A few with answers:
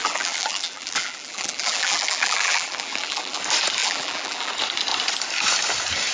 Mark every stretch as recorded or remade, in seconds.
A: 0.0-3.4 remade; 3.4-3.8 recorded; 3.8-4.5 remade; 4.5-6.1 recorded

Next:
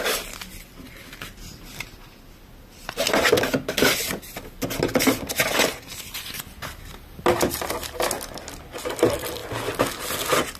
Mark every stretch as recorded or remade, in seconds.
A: 0.0-10.6 recorded

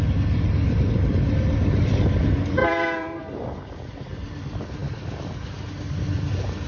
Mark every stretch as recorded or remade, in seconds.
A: 0.0-2.6 recorded; 2.6-3.2 remade; 3.2-6.7 recorded

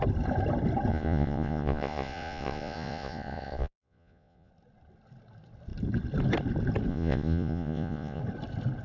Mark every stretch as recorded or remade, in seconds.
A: 0.0-0.9 recorded; 0.9-4.5 remade; 4.5-6.9 recorded; 6.9-8.2 remade; 8.2-8.8 recorded

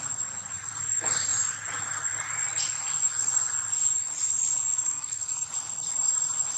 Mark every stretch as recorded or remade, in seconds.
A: 0.0-4.7 recorded; 4.7-5.5 remade; 5.5-6.6 recorded